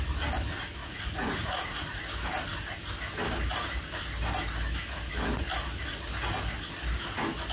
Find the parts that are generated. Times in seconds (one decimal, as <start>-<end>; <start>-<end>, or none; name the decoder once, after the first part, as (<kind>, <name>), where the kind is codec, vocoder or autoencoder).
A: 0.8-2.0 (vocoder, Vocos)